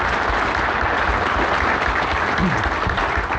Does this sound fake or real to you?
real